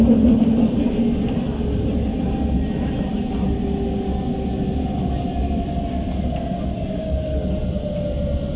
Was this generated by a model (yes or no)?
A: no